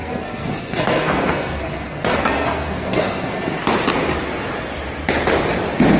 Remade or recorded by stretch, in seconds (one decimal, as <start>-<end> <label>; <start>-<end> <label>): 0.0-3.6 remade; 3.6-6.0 recorded